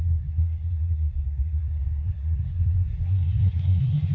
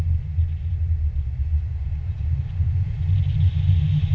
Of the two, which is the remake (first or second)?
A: first